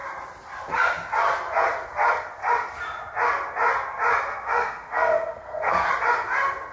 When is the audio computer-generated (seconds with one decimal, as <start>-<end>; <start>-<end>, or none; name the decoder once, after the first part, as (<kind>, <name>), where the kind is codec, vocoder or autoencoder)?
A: 4.3-5.9 (codec, SNAC)